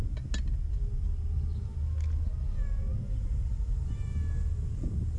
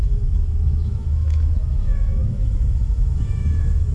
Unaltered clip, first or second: first